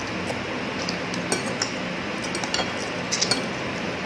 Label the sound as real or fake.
real